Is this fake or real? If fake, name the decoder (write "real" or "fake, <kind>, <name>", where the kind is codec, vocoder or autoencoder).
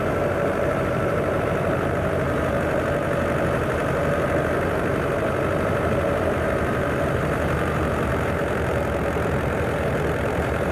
fake, vocoder, BigVGAN v2